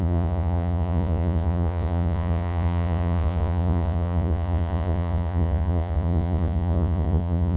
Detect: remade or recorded remade